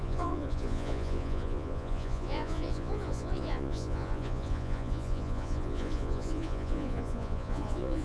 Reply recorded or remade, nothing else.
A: remade